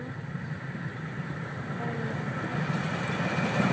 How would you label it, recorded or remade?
recorded